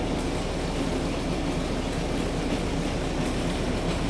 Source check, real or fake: real